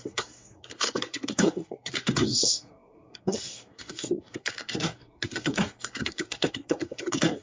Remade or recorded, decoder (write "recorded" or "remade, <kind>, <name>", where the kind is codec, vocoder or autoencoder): remade, codec, SNAC